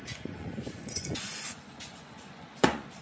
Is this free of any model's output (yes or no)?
no